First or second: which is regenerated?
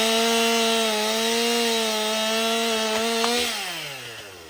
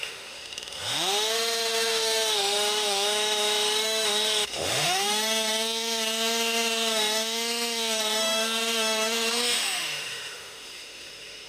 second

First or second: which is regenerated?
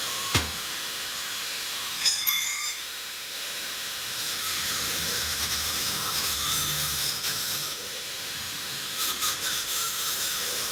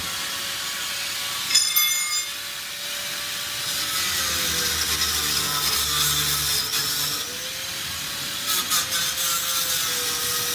first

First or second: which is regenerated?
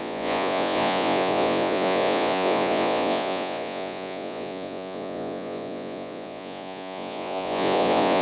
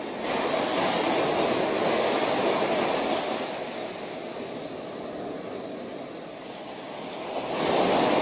first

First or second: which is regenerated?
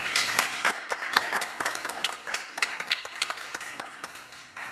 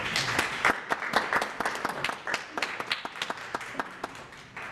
first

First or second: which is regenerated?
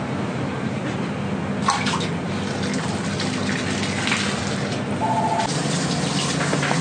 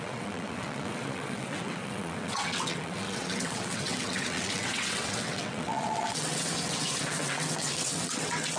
second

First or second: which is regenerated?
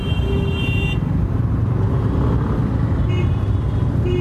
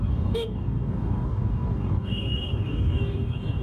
second